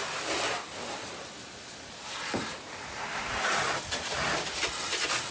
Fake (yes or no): no